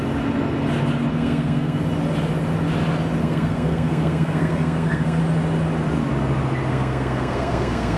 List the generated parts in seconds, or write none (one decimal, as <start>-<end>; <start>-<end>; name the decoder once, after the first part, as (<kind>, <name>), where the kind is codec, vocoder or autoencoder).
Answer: 1.1-1.8 (codec, SNAC); 3.2-5.2; 6.7-8.0